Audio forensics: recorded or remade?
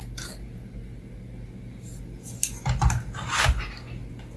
recorded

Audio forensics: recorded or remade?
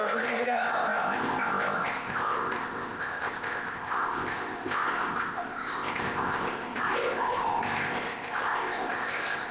remade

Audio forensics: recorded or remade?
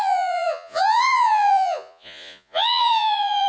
remade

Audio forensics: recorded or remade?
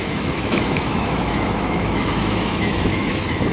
remade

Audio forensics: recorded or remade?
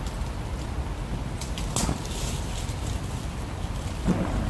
recorded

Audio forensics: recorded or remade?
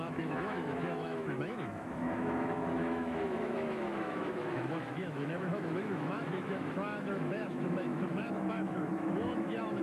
remade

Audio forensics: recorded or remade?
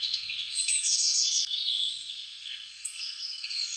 remade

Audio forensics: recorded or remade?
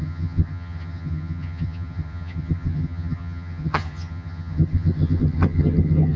remade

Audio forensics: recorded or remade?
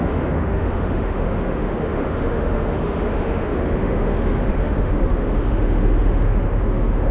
remade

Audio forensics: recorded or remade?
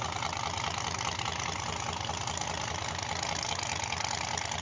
recorded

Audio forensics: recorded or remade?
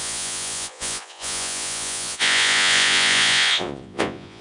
remade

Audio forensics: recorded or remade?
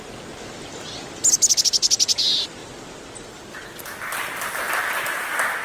recorded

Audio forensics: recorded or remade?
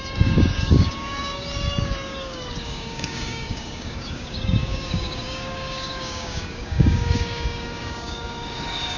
remade